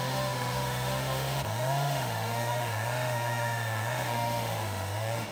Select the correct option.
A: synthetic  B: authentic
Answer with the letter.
A